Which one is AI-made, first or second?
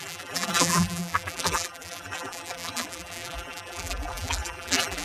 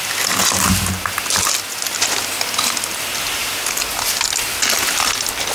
first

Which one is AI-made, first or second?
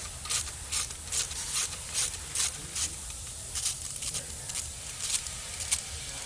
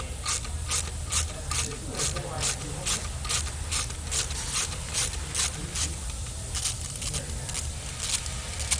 first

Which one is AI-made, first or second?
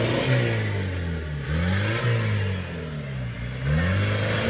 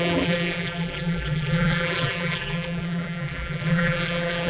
second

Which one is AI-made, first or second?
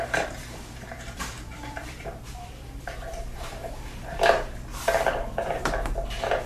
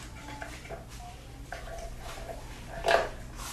first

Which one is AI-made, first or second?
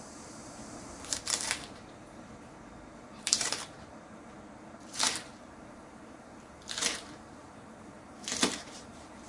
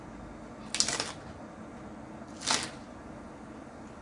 first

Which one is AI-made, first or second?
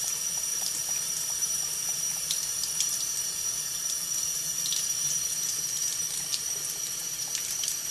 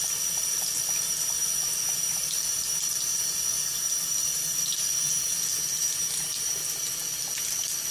first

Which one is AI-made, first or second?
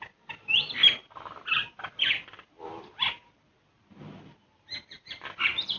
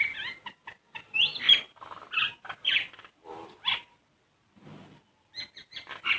first